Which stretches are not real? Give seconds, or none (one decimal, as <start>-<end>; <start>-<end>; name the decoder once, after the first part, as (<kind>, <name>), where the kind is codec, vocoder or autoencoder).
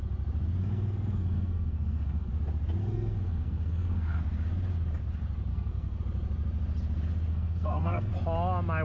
0.6-2.3 (codec, SNAC); 2.8-4.2; 5.5-6.0; 7.3-8.1